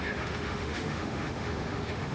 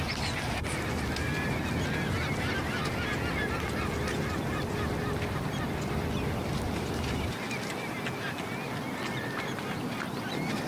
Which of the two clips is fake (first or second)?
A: first